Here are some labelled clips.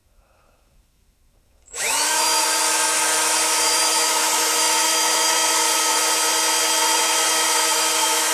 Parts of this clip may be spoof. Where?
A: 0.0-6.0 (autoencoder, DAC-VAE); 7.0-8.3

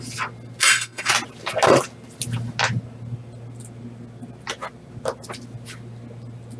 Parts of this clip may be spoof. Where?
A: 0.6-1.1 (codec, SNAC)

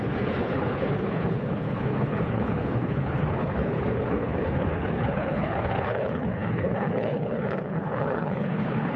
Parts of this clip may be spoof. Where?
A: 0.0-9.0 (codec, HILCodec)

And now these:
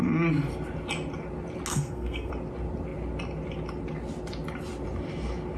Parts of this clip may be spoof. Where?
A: 1.7-2.3 (codec, SNAC)

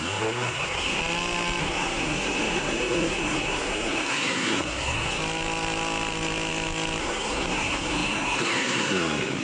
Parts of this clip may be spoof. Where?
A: 0.0-1.0 (codec, SNAC); 1.6-5.2; 7.0-9.4

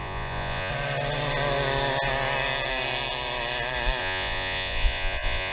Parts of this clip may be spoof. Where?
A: 0.0-0.7 (vocoder, Vocos); 4.0-5.5

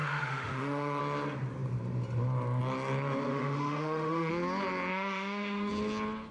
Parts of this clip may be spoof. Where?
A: 0.0-1.0 (autoencoder, DAC-VAE); 3.3-4.3; 4.9-5.7